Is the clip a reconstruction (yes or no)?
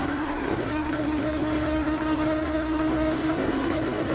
yes